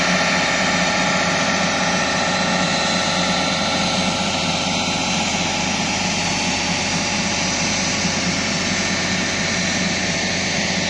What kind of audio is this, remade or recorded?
recorded